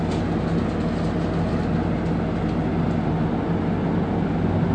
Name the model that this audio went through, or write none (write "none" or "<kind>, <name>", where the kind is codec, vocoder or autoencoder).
none